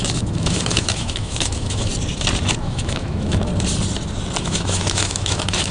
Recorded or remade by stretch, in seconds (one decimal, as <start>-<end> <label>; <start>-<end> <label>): 0.0-1.9 remade; 1.9-2.6 recorded; 2.6-3.5 remade; 3.5-4.4 recorded; 4.4-5.7 remade